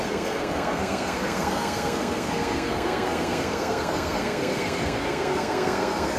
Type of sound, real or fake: fake